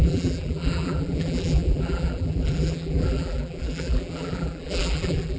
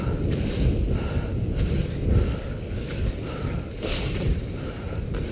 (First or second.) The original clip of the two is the second